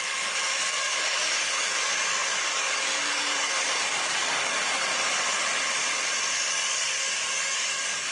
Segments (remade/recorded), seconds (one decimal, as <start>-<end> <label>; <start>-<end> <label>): 0.0-4.9 remade; 4.9-6.4 recorded; 6.4-8.1 remade